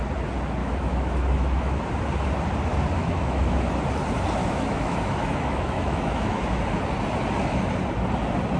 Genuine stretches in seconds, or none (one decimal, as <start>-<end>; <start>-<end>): 0.0-0.6; 1.8-3.0; 3.5-4.4; 6.6-8.6